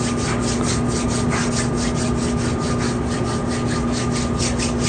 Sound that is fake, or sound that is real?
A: real